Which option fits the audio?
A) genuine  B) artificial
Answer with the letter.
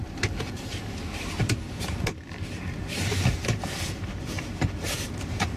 B